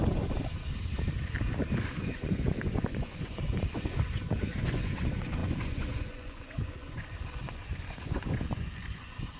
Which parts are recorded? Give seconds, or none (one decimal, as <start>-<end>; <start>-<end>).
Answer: 0.0-2.0